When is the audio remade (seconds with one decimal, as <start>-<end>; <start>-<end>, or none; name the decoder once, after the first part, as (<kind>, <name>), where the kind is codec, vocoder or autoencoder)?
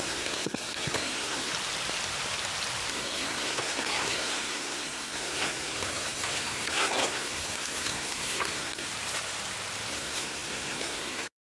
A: 0.0-1.5 (codec, SNAC); 2.9-8.9; 9.9-11.6